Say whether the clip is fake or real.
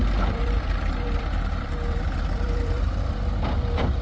fake